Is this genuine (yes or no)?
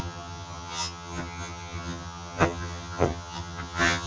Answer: no